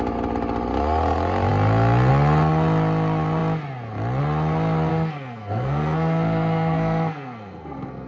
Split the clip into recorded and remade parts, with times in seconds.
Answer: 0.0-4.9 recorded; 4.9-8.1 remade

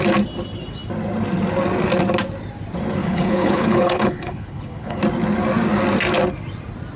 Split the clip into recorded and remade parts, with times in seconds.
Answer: 0.0-3.0 recorded; 3.0-5.0 remade; 5.0-7.0 recorded

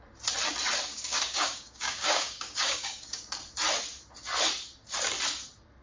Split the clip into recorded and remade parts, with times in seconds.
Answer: 0.0-0.9 recorded; 0.9-3.3 remade; 3.3-5.8 recorded

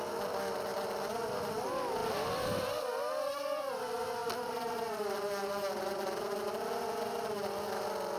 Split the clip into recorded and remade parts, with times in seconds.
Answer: 0.0-2.0 recorded; 2.0-3.7 remade; 3.7-4.2 recorded; 4.2-4.8 remade; 4.8-8.2 recorded

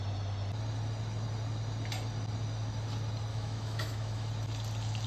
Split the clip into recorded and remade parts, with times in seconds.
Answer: 0.0-3.3 recorded; 3.3-4.3 remade; 4.3-5.1 recorded

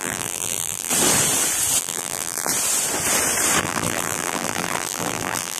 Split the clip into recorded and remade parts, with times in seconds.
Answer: 0.0-0.9 remade; 0.9-1.8 recorded; 1.8-2.5 remade; 2.5-3.6 recorded; 3.6-5.6 remade

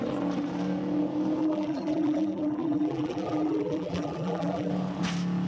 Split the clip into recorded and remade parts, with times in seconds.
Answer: 0.0-1.4 recorded; 1.4-4.7 remade; 4.7-5.5 recorded

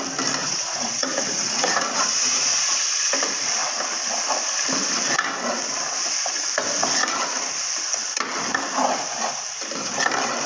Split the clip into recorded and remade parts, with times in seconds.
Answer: 0.0-0.4 recorded; 0.4-2.8 remade; 2.8-10.5 recorded